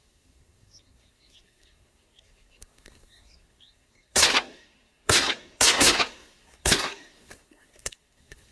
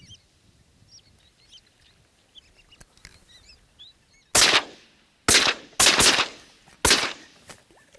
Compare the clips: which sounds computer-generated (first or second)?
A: first